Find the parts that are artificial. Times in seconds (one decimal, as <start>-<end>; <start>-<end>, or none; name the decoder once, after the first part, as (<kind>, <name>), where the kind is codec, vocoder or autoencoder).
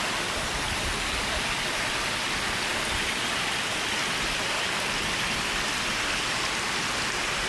none